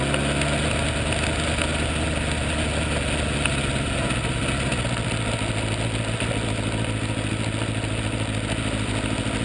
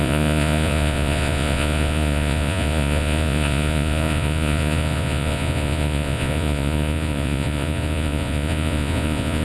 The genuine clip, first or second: first